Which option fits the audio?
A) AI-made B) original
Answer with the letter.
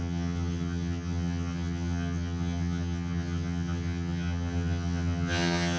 A